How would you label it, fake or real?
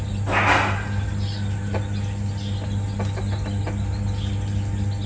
real